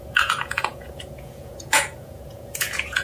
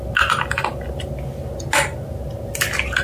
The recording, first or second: second